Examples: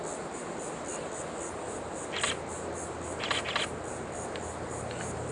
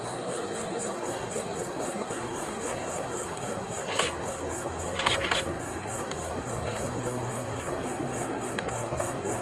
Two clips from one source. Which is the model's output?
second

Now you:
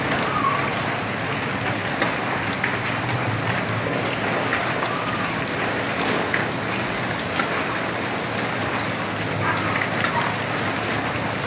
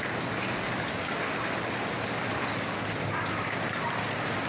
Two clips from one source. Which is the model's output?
first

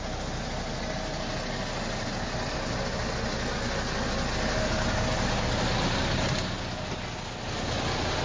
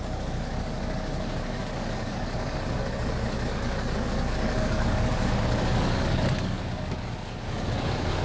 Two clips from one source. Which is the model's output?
second